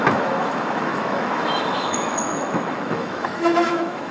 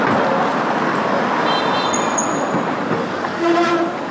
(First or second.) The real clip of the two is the second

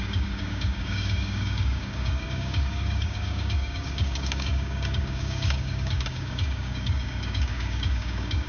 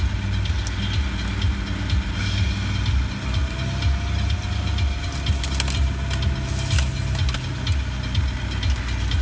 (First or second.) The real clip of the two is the second